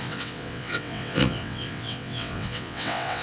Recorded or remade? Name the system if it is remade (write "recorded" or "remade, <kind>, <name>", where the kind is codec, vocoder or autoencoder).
remade, vocoder, WaveNeXt